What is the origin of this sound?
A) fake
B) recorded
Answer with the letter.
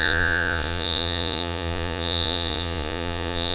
A